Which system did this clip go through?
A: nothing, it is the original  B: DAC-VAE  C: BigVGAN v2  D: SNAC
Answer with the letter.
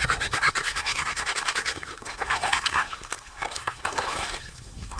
D